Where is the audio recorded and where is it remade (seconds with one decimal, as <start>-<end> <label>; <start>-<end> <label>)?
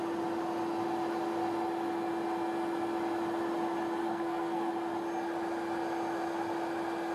0.0-4.0 recorded; 4.0-4.7 remade; 4.7-7.1 recorded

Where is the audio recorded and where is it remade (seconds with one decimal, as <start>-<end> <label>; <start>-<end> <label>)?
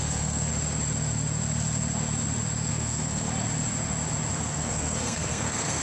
0.0-0.5 remade; 0.5-2.7 recorded; 2.7-3.3 remade; 3.3-4.3 recorded; 4.3-5.8 remade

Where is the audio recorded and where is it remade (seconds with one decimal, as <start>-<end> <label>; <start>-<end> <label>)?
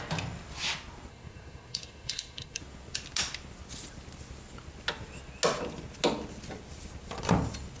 0.0-1.1 recorded; 1.1-2.6 remade; 2.6-7.8 recorded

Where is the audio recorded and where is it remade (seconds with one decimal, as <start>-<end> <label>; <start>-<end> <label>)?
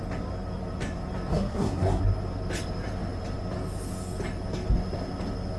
0.0-1.3 recorded; 1.3-2.0 remade; 2.0-5.6 recorded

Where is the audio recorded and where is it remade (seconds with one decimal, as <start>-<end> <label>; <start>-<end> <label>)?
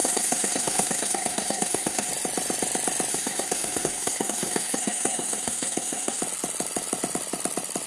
0.0-2.1 remade; 2.1-3.1 recorded; 3.1-6.2 remade; 6.2-7.9 recorded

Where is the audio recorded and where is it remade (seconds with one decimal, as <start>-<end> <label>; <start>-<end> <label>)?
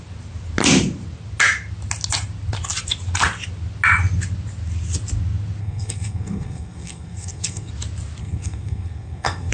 0.0-5.6 recorded; 5.6-7.7 remade; 7.7-8.2 recorded; 8.2-9.5 remade